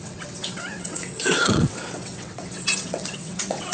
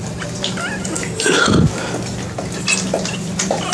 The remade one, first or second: first